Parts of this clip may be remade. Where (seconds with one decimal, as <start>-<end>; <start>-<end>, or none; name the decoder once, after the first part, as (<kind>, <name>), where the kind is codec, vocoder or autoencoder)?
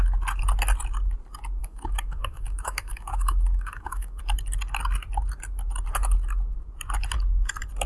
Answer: 1.6-4.2 (autoencoder, DAC-VAE)